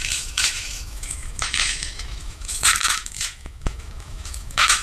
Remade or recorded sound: remade